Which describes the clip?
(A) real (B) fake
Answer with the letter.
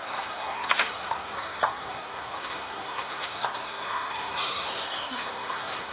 B